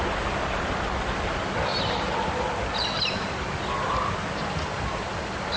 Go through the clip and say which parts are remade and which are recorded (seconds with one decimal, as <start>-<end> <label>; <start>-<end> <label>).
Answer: 0.0-5.6 recorded